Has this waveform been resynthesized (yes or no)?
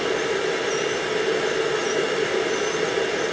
no